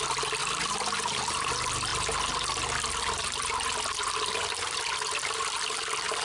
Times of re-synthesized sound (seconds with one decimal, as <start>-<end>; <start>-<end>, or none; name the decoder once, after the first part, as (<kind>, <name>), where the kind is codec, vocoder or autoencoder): 0.4-1.5 (vocoder, BigVGAN v2)